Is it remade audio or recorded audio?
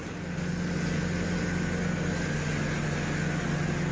recorded